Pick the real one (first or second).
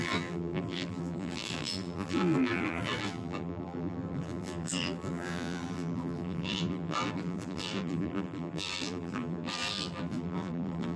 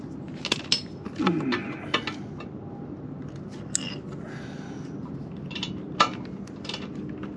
second